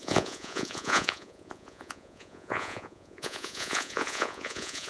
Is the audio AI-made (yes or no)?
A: yes